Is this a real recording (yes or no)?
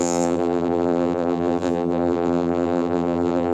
no